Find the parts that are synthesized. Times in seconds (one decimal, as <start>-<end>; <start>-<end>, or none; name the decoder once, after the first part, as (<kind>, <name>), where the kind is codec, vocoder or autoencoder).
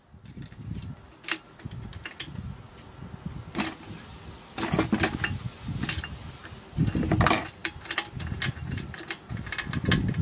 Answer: none